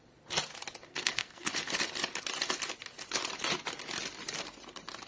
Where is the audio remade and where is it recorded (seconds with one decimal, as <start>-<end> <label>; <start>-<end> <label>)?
0.0-0.9 recorded; 0.9-1.5 remade; 1.5-5.1 recorded